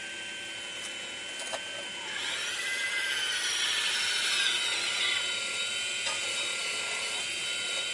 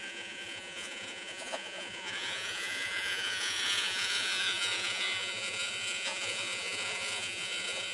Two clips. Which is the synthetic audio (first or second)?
second